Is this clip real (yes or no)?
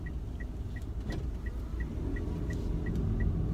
yes